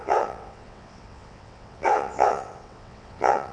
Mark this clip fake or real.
fake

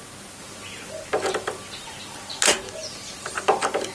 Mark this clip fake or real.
real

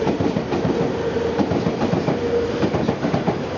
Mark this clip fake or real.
real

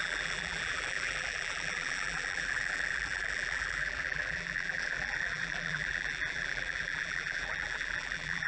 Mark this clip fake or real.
fake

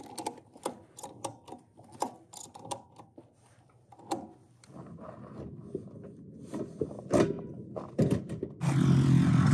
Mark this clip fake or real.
real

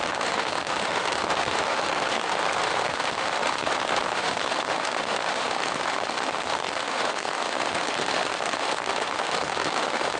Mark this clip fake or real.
fake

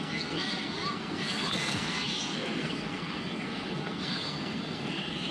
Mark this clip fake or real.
fake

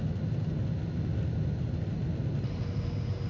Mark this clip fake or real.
real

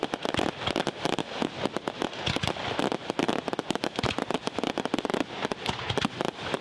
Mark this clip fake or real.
real